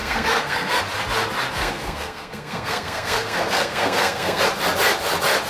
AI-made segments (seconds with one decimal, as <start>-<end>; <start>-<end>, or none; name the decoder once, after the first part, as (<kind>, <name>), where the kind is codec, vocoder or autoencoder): 0.0-0.8 (codec, SNAC); 1.6-4.4